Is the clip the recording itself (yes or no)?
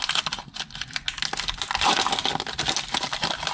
yes